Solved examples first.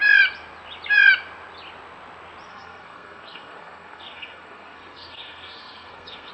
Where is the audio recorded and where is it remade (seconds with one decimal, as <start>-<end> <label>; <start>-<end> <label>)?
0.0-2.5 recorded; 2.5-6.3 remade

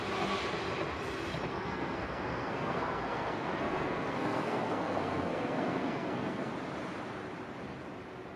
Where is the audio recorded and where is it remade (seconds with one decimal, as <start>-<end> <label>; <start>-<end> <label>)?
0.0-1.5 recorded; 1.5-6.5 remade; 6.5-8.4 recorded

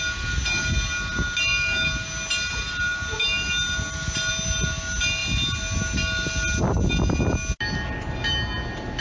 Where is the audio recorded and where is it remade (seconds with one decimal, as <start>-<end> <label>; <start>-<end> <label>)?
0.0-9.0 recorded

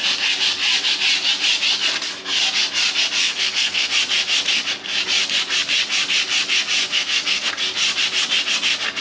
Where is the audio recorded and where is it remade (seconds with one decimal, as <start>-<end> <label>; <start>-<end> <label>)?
0.0-3.2 recorded; 3.2-3.9 remade; 3.9-6.8 recorded; 6.8-7.5 remade; 7.5-9.0 recorded